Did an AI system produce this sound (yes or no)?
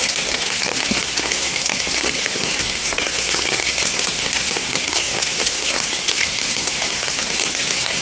yes